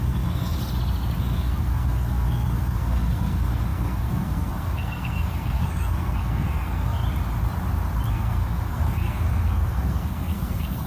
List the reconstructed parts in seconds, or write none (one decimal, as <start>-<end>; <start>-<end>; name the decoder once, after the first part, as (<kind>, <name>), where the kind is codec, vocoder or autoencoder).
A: 0.0-0.6 (codec, SNAC); 1.2-7.0; 8.1-10.9